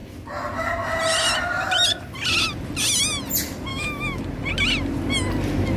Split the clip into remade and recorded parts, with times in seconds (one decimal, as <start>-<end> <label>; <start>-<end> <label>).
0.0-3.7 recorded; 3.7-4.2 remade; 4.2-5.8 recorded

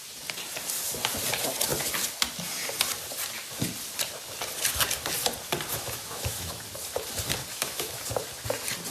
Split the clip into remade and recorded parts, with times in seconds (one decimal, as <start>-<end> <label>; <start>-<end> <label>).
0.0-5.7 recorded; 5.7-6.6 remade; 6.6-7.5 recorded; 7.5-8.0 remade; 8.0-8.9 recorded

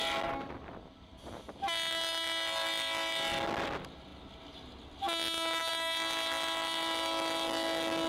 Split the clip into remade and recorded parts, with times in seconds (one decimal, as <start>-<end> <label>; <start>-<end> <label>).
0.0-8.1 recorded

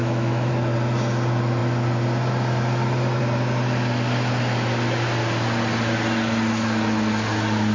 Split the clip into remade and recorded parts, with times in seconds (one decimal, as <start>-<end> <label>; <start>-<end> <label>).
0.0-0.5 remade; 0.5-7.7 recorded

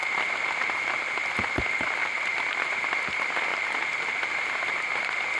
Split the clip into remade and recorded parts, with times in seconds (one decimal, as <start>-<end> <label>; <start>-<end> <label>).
0.0-5.4 recorded

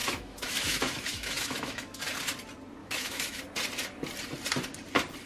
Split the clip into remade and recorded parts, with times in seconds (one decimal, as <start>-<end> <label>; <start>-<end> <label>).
0.0-2.0 remade; 2.0-2.8 recorded; 2.8-3.4 remade; 3.4-5.3 recorded

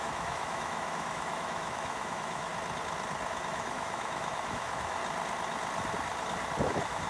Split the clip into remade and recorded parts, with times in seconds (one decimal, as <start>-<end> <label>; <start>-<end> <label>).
0.0-2.5 remade; 2.5-3.3 recorded; 3.3-5.0 remade; 5.0-6.6 recorded; 6.6-7.1 remade

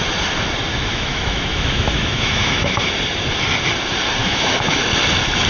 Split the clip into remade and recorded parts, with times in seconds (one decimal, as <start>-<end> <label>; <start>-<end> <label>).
0.0-0.7 recorded; 0.7-2.9 remade; 2.9-4.2 recorded; 4.2-4.8 remade; 4.8-5.5 recorded